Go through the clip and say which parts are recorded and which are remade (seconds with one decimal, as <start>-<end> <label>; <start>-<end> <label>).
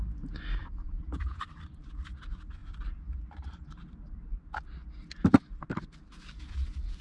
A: 0.0-0.6 recorded; 0.6-1.4 remade; 1.4-7.0 recorded